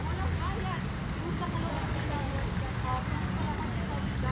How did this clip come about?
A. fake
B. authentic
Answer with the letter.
B